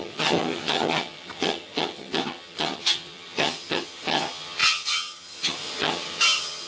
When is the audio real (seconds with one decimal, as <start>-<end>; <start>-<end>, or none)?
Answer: none